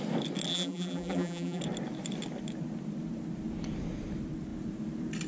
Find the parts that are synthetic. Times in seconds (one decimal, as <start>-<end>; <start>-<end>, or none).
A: 0.5-1.6